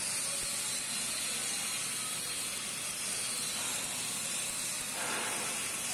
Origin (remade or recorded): recorded